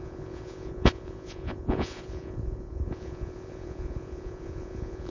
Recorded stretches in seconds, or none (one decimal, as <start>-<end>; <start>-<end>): none